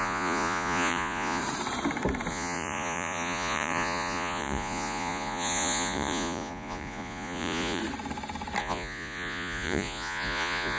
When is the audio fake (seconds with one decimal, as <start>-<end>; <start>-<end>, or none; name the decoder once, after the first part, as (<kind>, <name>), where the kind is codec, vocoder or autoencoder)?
0.0-1.4 (vocoder, Vocos); 2.3-7.8; 8.6-10.8